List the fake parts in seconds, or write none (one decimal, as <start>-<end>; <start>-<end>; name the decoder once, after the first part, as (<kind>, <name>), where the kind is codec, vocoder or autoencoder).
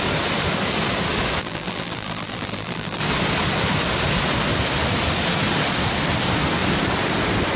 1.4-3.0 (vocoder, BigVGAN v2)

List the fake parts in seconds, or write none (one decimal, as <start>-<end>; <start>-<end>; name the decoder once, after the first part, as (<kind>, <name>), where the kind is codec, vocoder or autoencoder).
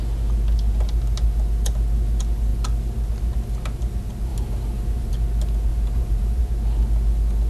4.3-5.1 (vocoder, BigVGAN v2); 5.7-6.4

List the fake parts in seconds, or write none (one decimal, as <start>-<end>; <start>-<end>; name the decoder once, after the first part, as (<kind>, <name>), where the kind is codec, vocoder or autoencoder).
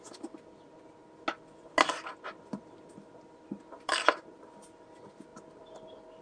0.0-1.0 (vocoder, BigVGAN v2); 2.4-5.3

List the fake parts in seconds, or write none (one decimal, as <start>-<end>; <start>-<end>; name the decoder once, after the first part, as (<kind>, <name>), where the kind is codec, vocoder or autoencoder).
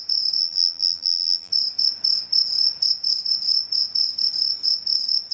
0.4-1.5 (vocoder, BigVGAN v2)